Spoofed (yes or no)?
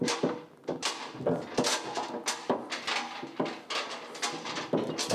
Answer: no